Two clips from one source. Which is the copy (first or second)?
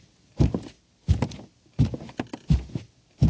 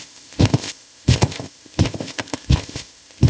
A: second